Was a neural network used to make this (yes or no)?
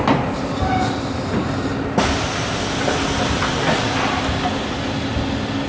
no